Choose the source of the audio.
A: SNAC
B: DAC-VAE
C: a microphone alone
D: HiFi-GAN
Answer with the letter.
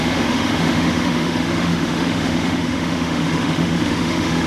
B